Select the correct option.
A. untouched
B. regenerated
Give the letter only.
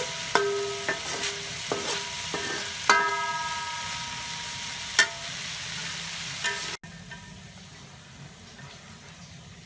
A